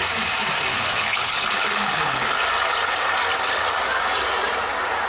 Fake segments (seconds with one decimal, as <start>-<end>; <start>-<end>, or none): 0.7-2.3